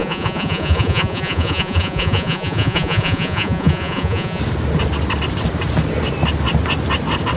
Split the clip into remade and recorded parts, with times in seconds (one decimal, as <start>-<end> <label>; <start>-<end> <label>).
0.0-4.4 remade; 4.4-7.4 recorded